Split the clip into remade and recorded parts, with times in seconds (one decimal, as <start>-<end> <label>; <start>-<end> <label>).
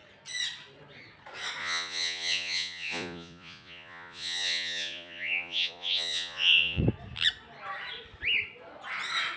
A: 0.0-1.6 recorded; 1.6-6.8 remade; 6.8-9.4 recorded